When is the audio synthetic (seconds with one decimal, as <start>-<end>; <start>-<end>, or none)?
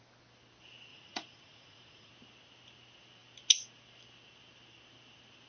0.9-2.1